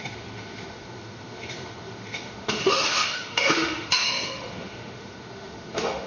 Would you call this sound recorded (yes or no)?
no